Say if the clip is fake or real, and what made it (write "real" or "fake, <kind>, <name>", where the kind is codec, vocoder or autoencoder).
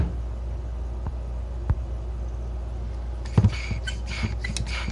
real